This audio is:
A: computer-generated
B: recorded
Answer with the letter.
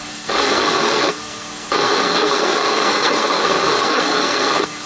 A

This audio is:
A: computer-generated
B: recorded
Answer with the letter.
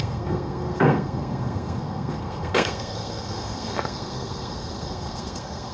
A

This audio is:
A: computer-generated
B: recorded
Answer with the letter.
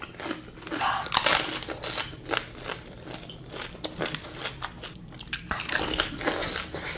B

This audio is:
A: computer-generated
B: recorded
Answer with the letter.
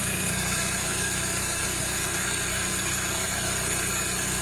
A